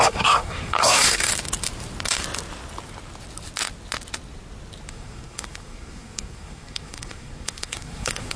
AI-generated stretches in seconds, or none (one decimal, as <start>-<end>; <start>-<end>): 0.0-1.3; 4.9-8.4